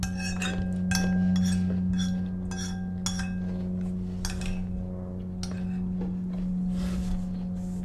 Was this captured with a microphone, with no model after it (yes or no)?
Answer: yes